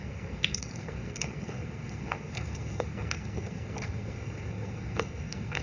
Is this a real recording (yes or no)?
no